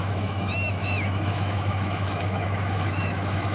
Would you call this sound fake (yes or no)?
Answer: yes